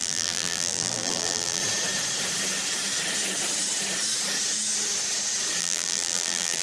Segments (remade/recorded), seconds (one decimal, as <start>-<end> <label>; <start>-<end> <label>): 0.0-1.6 remade; 1.6-5.6 recorded; 5.6-6.6 remade